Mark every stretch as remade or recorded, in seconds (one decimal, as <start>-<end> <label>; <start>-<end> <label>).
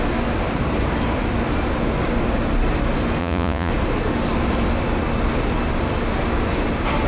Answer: 0.0-3.2 recorded; 3.2-3.7 remade; 3.7-7.1 recorded